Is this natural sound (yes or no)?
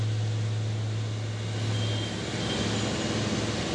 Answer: yes